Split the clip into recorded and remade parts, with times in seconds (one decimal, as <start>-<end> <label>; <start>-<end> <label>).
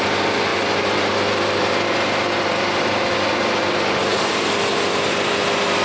0.0-5.8 recorded